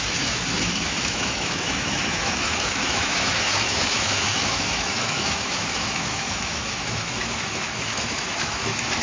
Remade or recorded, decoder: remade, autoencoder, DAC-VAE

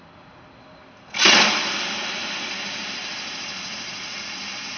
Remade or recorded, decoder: recorded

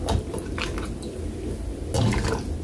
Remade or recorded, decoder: recorded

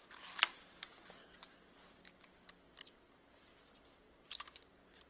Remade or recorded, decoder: recorded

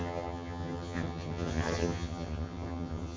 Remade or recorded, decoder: remade, vocoder, HiFi-GAN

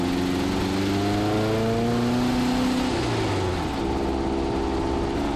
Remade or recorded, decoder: recorded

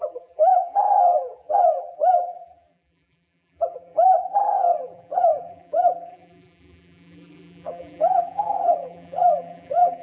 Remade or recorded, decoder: remade, vocoder, BigVGAN v2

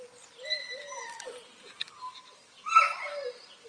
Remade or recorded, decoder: recorded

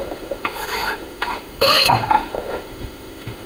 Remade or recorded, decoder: remade, autoencoder, DAC-VAE